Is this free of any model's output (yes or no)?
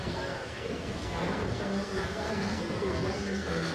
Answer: no